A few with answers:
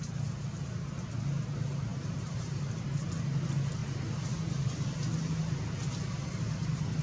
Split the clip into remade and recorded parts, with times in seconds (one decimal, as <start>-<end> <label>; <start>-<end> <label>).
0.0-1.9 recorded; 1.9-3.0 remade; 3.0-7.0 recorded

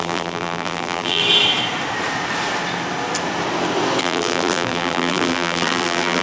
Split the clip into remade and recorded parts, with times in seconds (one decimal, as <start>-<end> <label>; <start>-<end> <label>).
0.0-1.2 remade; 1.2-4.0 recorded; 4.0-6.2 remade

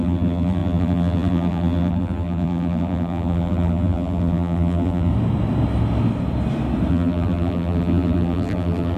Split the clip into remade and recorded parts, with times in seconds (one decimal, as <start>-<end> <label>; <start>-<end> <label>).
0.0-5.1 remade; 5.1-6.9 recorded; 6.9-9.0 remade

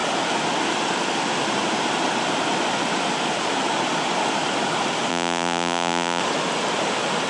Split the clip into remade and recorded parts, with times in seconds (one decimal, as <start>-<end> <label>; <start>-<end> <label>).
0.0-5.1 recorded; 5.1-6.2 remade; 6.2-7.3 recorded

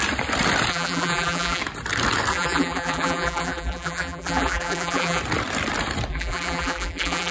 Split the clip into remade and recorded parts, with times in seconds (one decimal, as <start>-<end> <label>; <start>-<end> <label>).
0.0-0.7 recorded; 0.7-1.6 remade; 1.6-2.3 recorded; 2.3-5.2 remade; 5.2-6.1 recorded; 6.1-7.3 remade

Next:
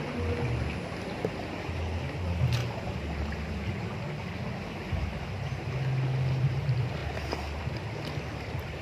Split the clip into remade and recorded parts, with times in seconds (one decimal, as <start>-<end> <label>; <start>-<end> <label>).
0.0-8.8 recorded

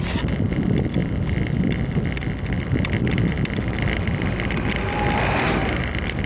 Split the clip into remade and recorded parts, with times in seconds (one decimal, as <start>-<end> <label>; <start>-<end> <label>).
0.0-1.0 recorded; 1.0-4.8 remade; 4.8-6.3 recorded

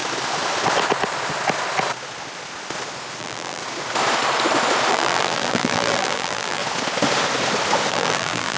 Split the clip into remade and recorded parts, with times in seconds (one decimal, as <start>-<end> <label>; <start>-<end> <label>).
0.0-3.2 recorded; 3.2-3.6 remade; 3.6-4.9 recorded; 4.9-6.6 remade; 6.6-7.9 recorded; 7.9-8.6 remade